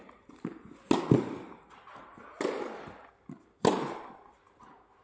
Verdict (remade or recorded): recorded